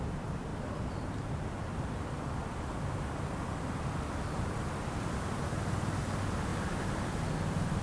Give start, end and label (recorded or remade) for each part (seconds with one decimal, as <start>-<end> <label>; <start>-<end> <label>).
0.0-0.5 recorded; 0.5-1.5 remade; 1.5-6.5 recorded; 6.5-7.3 remade; 7.3-7.8 recorded